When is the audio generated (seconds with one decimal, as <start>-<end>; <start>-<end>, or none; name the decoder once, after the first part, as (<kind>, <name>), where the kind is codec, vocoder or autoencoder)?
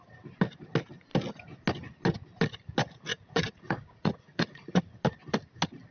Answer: 3.1-4.8 (vocoder, Vocos)